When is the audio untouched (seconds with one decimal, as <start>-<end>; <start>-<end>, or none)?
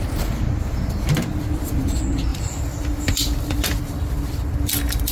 0.0-2.3